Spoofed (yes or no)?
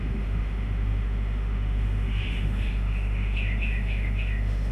yes